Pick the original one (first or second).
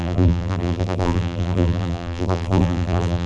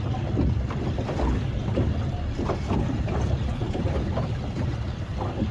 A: second